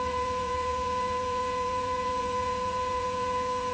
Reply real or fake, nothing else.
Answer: fake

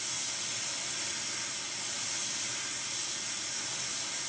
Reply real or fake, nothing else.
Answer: real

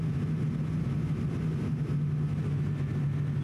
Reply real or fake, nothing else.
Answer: real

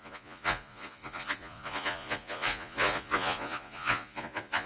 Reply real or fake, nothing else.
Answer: fake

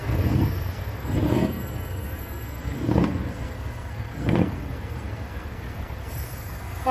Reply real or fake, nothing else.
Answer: fake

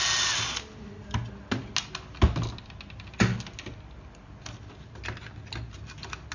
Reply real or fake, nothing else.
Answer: real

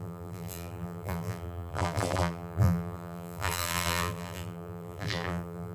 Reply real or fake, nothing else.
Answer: fake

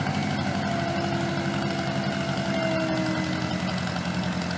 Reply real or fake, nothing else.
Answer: real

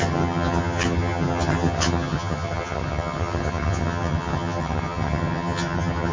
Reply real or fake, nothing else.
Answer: fake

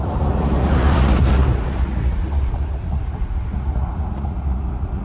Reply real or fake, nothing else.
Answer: fake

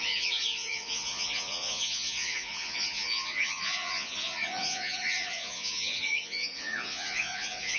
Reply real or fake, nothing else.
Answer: fake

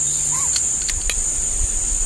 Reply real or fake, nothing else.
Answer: real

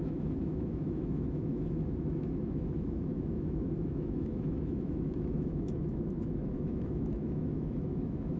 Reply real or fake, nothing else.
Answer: fake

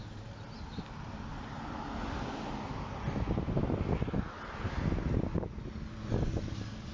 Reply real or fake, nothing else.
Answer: real